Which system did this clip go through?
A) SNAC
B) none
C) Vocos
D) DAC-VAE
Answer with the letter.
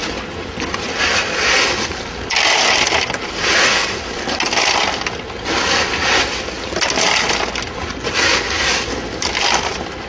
B